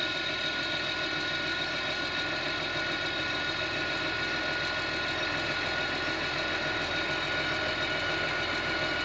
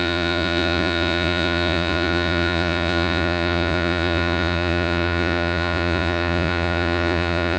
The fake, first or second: second